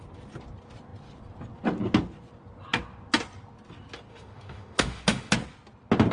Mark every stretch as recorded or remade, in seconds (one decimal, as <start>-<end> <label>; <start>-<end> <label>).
0.0-4.1 recorded; 4.1-5.3 remade; 5.3-6.1 recorded